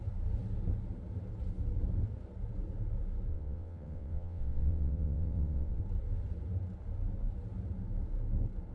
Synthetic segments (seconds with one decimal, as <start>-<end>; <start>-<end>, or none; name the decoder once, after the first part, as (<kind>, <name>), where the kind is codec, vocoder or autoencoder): 3.3-5.8 (vocoder, WaveNeXt)